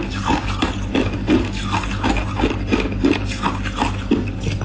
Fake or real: real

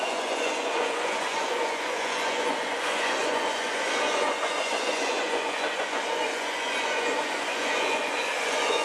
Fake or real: fake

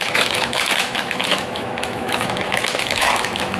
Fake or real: fake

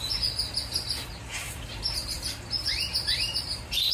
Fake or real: real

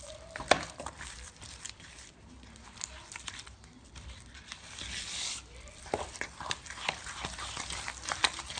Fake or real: fake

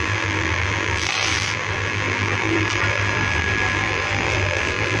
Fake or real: fake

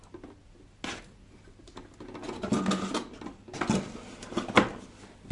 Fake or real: real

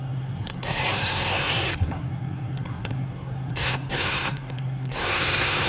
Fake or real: fake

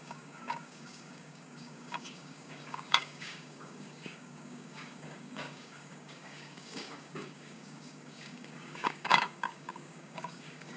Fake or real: fake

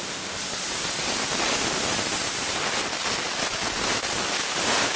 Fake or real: real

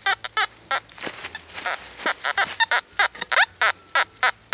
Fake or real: real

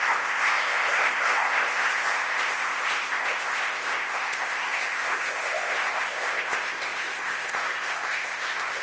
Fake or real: fake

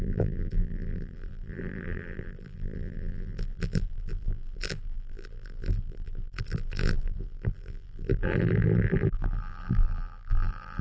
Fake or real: fake